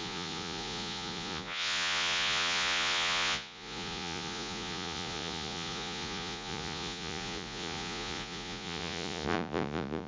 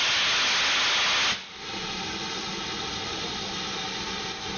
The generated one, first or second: first